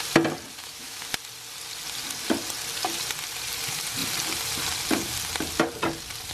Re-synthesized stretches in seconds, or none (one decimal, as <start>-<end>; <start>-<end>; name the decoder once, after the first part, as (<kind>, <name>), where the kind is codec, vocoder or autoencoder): 0.6-1.1 (autoencoder, DAC-VAE)